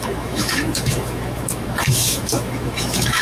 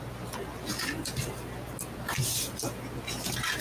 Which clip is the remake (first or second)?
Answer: first